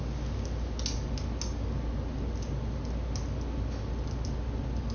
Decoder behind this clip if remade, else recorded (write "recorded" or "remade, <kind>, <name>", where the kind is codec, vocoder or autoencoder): recorded